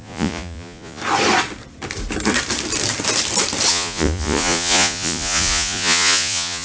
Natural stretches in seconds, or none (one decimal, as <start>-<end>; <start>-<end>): 1.0-3.7